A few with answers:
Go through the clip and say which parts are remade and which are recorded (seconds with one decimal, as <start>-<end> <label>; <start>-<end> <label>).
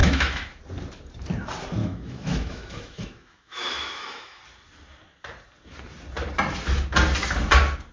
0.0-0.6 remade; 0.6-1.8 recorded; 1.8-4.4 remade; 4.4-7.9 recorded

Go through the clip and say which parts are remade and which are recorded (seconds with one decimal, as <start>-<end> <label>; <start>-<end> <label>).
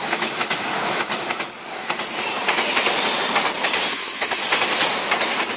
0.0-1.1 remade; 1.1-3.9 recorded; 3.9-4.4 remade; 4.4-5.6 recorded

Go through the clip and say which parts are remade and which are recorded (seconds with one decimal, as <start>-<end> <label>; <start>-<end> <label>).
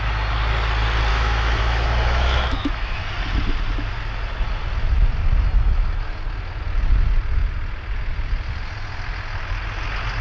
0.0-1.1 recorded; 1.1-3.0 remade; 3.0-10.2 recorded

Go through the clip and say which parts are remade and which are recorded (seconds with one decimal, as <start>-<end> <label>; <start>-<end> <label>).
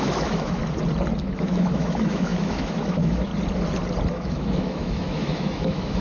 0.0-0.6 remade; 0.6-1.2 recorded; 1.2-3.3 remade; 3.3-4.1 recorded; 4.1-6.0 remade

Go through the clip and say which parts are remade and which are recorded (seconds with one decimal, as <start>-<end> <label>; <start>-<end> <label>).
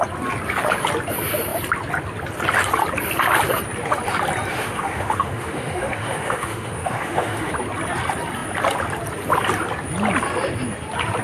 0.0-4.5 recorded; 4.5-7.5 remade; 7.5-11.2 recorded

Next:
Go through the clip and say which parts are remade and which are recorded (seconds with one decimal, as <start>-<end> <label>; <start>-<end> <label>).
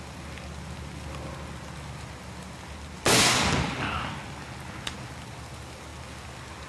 0.0-6.7 recorded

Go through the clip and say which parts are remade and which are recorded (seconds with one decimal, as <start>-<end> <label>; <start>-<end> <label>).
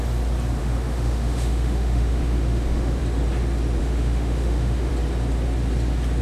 0.0-0.6 recorded; 0.6-3.0 remade; 3.0-3.8 recorded; 3.8-4.9 remade; 4.9-6.2 recorded